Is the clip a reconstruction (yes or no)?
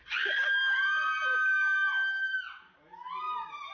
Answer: no